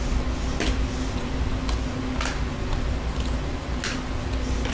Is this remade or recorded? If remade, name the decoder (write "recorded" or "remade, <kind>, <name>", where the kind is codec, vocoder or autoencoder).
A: recorded